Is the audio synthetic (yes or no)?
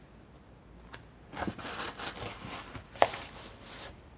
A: no